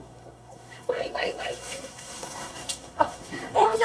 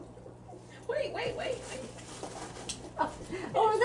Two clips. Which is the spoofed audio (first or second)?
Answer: first